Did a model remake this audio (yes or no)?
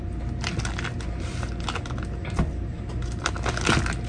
no